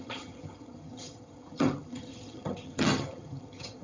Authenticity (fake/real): fake